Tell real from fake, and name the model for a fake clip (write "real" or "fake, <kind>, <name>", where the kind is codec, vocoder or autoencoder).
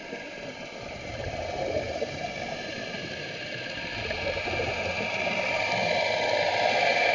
fake, vocoder, BigVGAN v2